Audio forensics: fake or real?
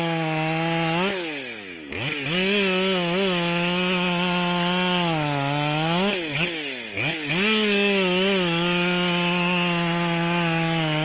real